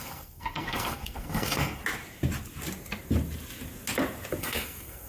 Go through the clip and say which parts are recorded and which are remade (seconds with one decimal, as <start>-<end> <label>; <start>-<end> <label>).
0.0-1.8 remade; 1.8-4.4 recorded; 4.4-5.1 remade